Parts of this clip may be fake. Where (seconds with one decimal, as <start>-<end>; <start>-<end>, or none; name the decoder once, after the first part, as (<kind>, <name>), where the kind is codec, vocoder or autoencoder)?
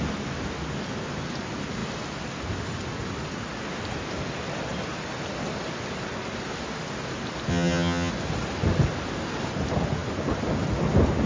7.5-8.1 (vocoder, HiFi-GAN)